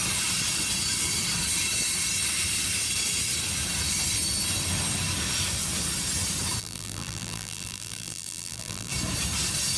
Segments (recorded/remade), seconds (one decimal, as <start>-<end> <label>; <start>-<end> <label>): 0.0-6.6 recorded; 6.6-8.9 remade; 8.9-9.8 recorded